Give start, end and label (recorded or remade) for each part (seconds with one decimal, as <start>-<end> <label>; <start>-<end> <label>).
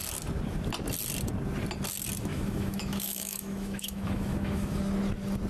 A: 0.0-2.3 recorded; 2.3-4.8 remade; 4.8-5.5 recorded